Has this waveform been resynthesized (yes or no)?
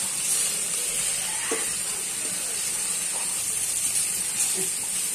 yes